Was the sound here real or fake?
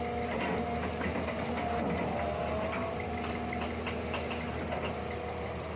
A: real